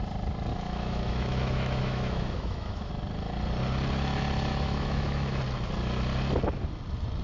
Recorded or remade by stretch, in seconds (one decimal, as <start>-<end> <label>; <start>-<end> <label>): 0.0-0.5 recorded; 0.5-2.9 remade; 2.9-4.5 recorded; 4.5-5.4 remade; 5.4-7.2 recorded

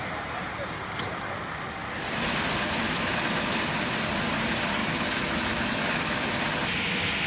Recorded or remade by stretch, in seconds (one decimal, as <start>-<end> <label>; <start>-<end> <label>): 0.0-4.8 recorded; 4.8-6.3 remade; 6.3-7.3 recorded

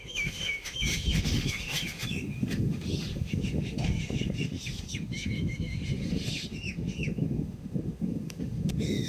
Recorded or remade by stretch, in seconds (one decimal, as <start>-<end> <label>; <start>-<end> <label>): 0.0-9.1 remade